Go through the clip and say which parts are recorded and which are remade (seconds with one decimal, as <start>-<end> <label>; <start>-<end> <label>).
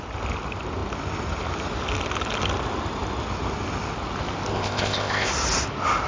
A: 0.0-4.5 recorded; 4.5-5.3 remade; 5.3-6.1 recorded